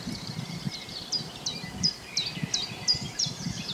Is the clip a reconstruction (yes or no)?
yes